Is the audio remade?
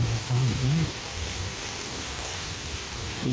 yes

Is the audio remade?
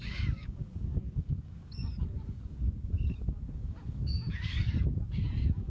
yes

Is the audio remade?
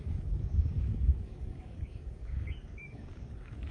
yes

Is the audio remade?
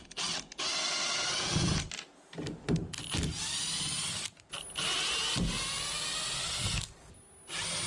no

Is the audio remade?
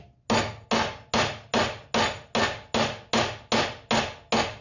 no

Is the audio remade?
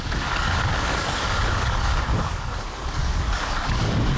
yes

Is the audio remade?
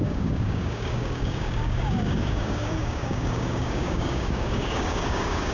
yes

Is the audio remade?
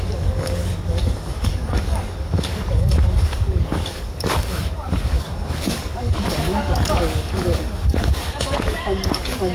yes